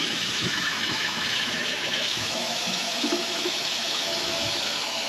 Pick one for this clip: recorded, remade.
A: remade